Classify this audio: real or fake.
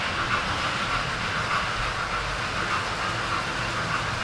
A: real